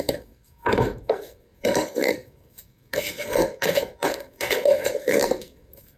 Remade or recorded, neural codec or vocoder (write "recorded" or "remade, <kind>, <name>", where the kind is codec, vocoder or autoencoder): remade, codec, SNAC